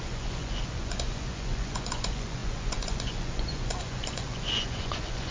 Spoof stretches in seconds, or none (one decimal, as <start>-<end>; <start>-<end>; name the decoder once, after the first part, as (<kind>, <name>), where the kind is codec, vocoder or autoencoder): 0.0-5.3 (vocoder, Vocos)